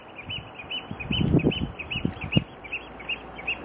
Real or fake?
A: real